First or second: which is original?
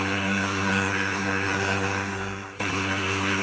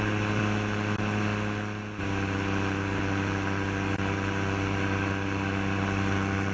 second